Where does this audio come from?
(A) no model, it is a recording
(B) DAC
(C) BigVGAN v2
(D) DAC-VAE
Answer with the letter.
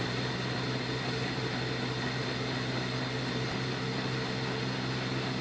A